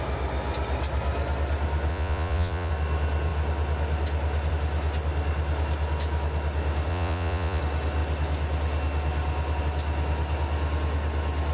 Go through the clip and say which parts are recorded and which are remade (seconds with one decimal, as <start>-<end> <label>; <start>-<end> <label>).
0.0-1.9 recorded; 1.9-2.7 remade; 2.7-6.9 recorded; 6.9-7.6 remade; 7.6-11.5 recorded